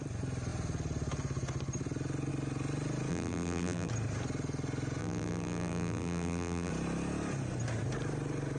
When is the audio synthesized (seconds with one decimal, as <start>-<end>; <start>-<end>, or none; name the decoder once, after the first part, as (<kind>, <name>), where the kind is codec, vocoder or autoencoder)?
3.1-3.9 (vocoder, BigVGAN v2); 5.0-6.7